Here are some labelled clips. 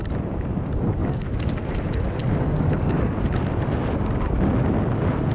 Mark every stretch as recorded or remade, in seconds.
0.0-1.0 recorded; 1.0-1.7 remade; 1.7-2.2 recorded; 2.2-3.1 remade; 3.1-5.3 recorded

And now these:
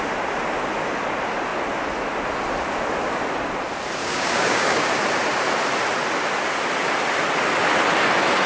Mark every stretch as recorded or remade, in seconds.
0.0-4.0 recorded; 4.0-4.9 remade; 4.9-8.5 recorded

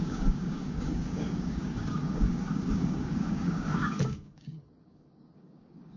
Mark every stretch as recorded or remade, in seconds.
0.0-6.0 remade

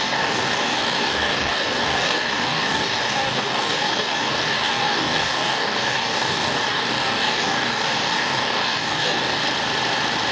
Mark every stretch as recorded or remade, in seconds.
0.0-9.4 remade; 9.4-10.3 recorded

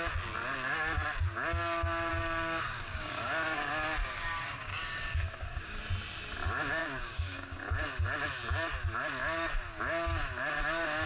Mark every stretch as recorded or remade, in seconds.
0.0-2.1 recorded; 2.1-3.6 remade; 3.6-4.0 recorded; 4.0-5.8 remade; 5.8-6.8 recorded; 6.8-7.6 remade; 7.6-11.1 recorded

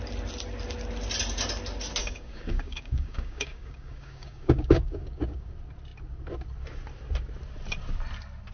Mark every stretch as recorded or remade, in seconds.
0.0-2.0 recorded; 2.0-5.5 remade; 5.5-8.5 recorded

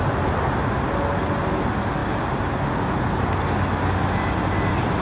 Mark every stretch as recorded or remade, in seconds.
0.0-5.0 recorded

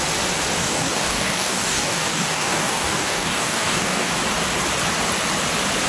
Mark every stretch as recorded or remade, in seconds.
0.0-0.6 recorded; 0.6-4.1 remade; 4.1-5.9 recorded